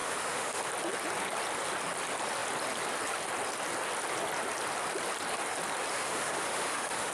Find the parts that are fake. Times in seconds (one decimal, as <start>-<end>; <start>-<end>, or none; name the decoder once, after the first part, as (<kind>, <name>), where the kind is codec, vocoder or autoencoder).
0.0-0.6 (autoencoder, DAC-VAE); 5.9-7.1